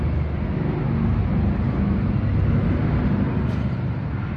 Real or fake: real